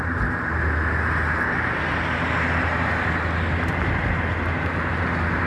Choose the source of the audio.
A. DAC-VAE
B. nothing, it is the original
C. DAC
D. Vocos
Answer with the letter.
B